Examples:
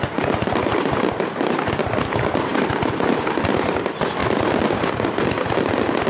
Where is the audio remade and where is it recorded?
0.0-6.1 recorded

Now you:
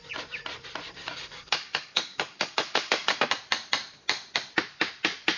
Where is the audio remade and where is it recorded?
0.0-1.0 recorded; 1.0-3.1 remade; 3.1-5.4 recorded

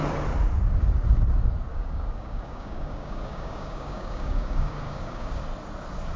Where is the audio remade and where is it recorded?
0.0-1.7 recorded; 1.7-5.4 remade; 5.4-6.2 recorded

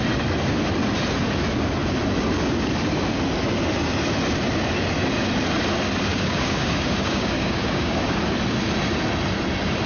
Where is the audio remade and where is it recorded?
0.0-6.1 recorded; 6.1-8.2 remade; 8.2-9.9 recorded